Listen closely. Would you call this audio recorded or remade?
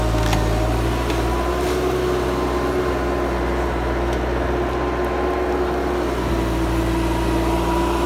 recorded